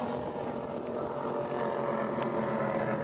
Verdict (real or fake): real